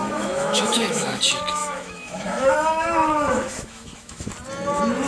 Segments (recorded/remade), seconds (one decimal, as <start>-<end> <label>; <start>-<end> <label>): 0.0-1.2 remade; 1.2-1.6 recorded; 1.6-4.3 remade; 4.3-5.1 recorded